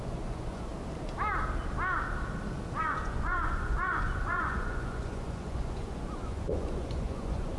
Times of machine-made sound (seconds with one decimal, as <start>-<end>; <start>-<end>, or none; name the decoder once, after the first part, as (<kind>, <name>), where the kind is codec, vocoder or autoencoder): 0.0-0.7 (vocoder, Vocos); 2.8-7.6